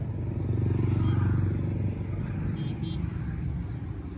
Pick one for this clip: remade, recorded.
recorded